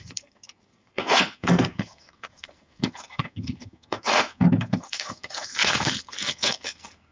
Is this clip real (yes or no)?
no